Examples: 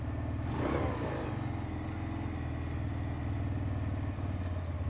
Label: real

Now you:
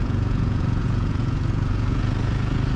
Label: fake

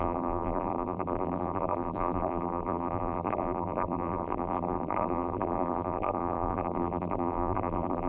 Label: fake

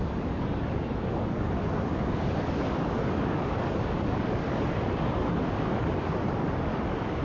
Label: fake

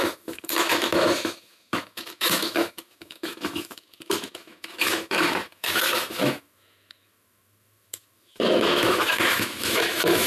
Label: fake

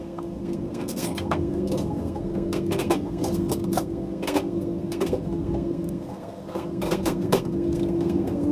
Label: fake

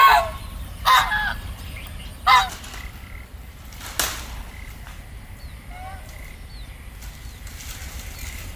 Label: real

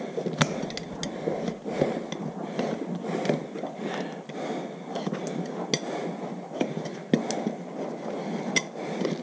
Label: real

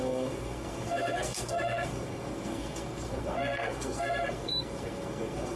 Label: fake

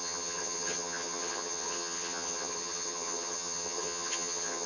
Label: fake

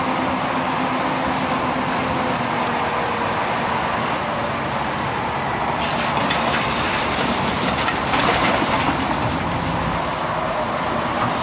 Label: real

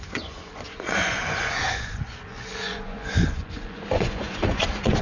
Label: fake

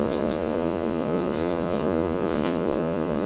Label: fake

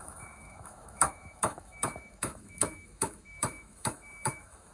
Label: fake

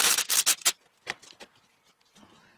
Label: real